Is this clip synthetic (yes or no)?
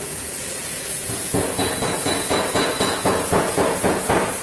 yes